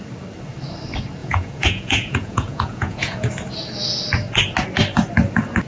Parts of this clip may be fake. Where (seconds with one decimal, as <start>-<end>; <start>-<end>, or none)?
1.2-3.3

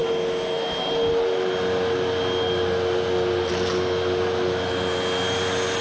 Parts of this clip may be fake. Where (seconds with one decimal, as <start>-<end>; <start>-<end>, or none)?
none